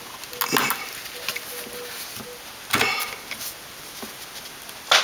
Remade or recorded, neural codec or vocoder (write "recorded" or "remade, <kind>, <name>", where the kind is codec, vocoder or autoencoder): recorded